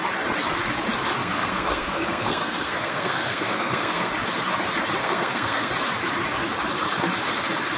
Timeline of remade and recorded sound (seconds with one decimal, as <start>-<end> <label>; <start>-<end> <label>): 0.0-1.2 recorded; 1.2-4.1 remade; 4.1-5.0 recorded; 5.0-5.7 remade; 5.7-7.8 recorded